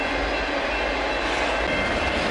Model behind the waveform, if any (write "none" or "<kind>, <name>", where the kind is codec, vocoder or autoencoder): none